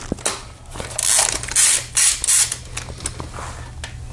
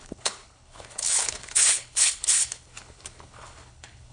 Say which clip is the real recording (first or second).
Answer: first